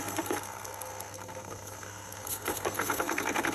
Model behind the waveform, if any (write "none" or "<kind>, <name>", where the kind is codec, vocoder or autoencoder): codec, SNAC